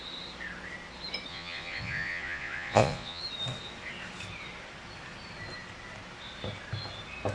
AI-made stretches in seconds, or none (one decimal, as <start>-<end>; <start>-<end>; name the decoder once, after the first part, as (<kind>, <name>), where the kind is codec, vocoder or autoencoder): 1.3-3.2 (vocoder, Vocos)